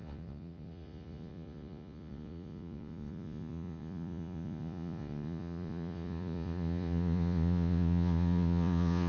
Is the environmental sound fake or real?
fake